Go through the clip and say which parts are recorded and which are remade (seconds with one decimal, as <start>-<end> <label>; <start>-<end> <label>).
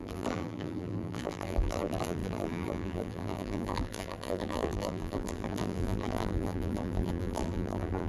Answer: 0.0-8.1 remade